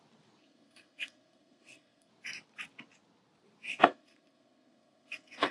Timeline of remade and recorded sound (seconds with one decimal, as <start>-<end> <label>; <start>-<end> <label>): 0.0-0.4 recorded; 0.4-2.1 remade; 2.1-3.7 recorded; 3.7-5.5 remade